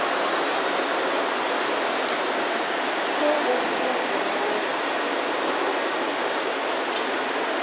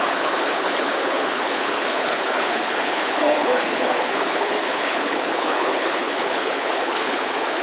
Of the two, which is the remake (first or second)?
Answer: second